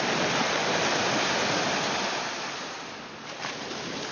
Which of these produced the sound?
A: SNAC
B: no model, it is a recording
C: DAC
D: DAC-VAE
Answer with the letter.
B